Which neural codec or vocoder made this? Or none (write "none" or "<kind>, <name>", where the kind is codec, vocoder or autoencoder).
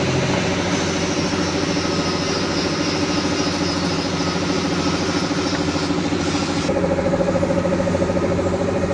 none